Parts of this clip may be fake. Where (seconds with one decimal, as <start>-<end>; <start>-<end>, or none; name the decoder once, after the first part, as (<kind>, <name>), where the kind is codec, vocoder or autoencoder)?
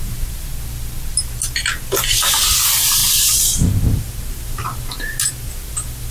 0.0-0.5 (vocoder, BigVGAN v2); 1.2-6.1